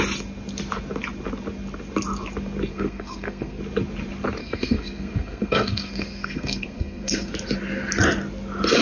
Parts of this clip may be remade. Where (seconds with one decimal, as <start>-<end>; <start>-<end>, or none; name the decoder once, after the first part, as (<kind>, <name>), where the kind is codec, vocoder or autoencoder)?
2.7-3.6 (codec, SNAC); 4.4-7.3